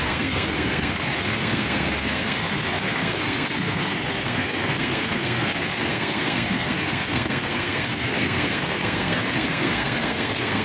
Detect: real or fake fake